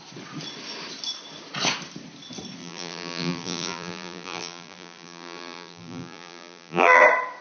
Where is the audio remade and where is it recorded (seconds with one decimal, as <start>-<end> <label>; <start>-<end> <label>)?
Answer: 0.0-2.6 recorded; 2.6-7.0 remade; 7.0-7.4 recorded